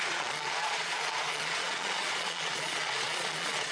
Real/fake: fake